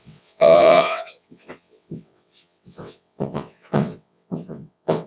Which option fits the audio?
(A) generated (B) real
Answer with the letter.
A